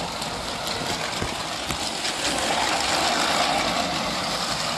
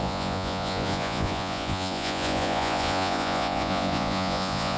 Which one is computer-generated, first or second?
second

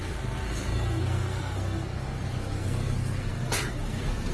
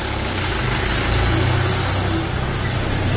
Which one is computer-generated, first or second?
first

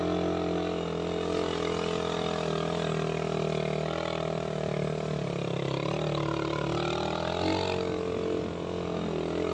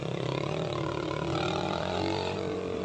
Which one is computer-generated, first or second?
second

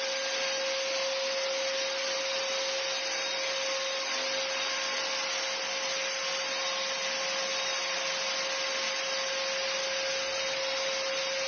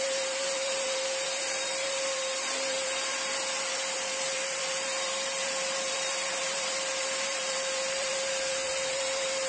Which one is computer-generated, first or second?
second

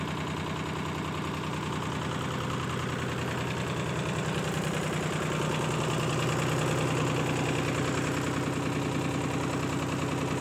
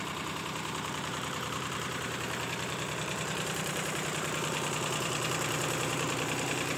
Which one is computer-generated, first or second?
second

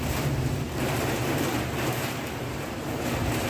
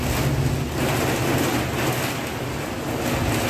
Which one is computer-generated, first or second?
first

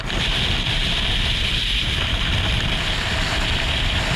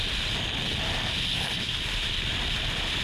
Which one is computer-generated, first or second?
first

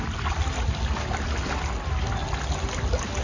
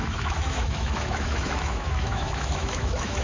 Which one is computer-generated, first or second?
second